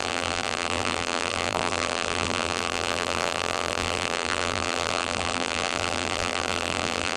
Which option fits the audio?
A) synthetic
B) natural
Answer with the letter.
A